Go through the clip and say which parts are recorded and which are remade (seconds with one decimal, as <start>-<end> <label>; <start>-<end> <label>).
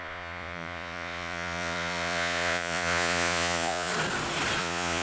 0.0-3.9 remade; 3.9-4.6 recorded; 4.6-5.0 remade